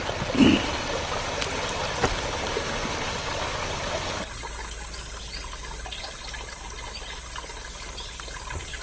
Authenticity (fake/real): real